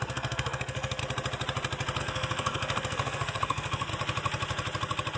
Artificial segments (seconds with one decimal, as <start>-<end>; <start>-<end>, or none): 0.0-1.0; 2.0-3.9